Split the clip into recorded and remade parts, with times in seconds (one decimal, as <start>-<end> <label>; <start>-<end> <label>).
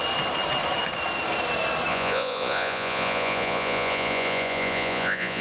0.0-1.9 recorded; 1.9-5.4 remade